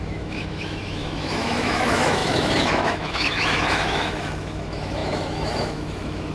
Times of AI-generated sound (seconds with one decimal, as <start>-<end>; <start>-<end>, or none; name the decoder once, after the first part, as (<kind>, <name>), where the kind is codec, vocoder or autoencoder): 0.0-6.3 (autoencoder, DAC-VAE)